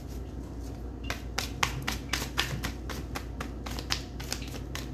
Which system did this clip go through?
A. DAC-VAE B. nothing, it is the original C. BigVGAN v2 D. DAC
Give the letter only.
B